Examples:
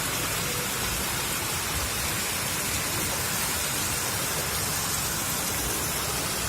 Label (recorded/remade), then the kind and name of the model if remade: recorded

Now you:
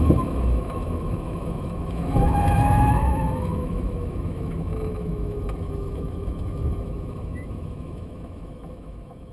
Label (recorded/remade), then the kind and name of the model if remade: remade, autoencoder, DAC-VAE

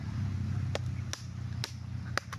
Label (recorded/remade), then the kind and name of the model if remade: recorded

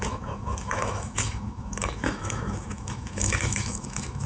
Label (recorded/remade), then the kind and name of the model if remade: remade, autoencoder, DAC-VAE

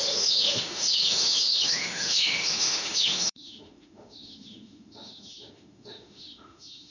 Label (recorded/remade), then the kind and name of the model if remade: remade, autoencoder, DAC-VAE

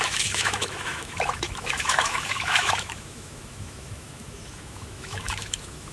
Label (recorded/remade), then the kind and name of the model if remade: remade, autoencoder, DAC-VAE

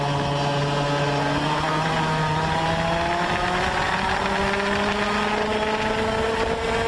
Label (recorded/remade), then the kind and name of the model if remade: recorded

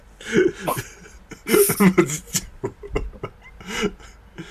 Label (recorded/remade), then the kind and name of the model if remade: recorded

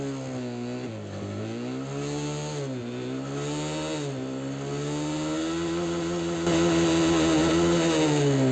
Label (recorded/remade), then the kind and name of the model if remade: recorded